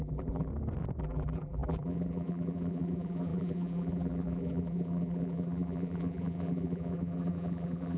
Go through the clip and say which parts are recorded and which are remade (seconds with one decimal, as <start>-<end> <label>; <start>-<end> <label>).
0.0-0.5 remade; 0.5-1.0 recorded; 1.0-8.0 remade